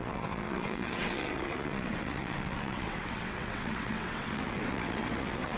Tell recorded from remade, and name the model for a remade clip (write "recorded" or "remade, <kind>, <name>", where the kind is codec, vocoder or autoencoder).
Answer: remade, vocoder, WaveNeXt